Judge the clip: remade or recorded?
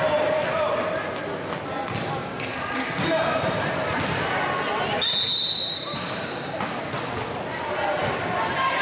recorded